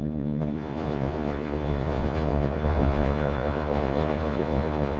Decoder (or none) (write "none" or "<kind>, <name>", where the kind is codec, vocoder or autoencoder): vocoder, Vocos